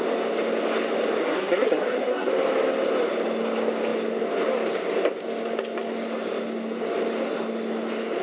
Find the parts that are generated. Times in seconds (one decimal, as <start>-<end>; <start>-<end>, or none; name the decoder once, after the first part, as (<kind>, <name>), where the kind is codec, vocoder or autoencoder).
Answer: 1.2-2.3 (codec, SNAC)